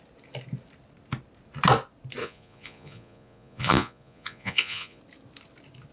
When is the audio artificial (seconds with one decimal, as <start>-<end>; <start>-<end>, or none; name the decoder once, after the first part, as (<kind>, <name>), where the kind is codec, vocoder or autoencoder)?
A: 2.2-5.0 (vocoder, Vocos)